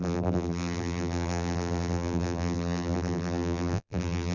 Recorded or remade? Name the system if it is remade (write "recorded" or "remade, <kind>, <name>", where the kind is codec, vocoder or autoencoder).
remade, vocoder, BigVGAN v2